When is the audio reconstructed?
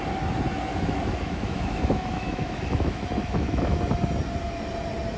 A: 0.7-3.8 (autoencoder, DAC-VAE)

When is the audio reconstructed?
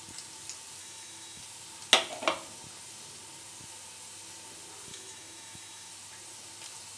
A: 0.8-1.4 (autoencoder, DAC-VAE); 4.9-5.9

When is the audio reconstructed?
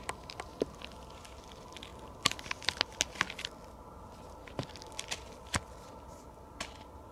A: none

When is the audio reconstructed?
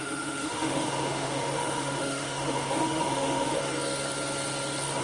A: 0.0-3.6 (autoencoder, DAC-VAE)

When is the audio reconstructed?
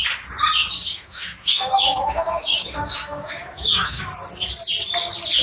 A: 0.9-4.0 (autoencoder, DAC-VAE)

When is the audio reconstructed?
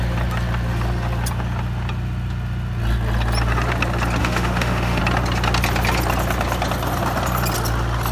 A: 4.2-5.0 (autoencoder, DAC-VAE)